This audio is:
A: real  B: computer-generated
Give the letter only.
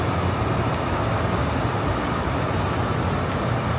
A